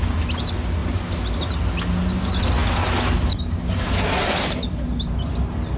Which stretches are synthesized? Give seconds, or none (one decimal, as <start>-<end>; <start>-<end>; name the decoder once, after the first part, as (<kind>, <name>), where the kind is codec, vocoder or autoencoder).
none